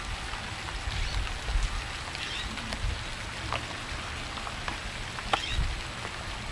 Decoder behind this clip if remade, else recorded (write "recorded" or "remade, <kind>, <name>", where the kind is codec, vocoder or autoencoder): recorded